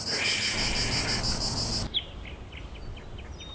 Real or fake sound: real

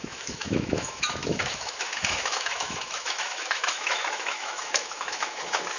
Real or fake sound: fake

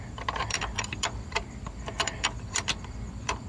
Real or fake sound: fake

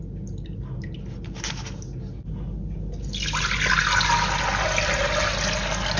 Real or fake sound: real